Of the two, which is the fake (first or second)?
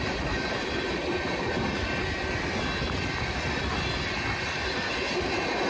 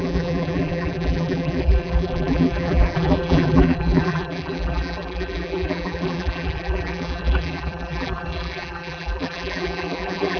second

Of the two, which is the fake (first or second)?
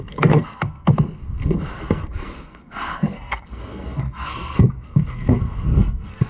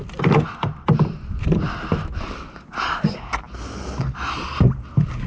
first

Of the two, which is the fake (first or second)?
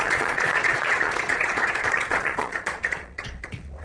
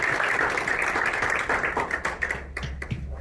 first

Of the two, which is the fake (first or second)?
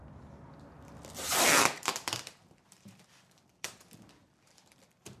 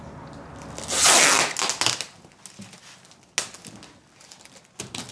first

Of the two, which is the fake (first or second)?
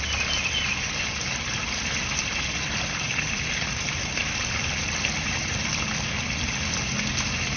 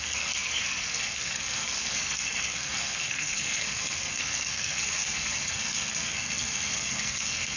second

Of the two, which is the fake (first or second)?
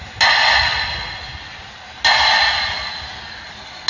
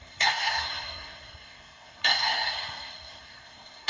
second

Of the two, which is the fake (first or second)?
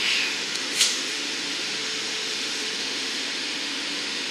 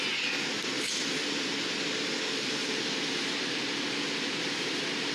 first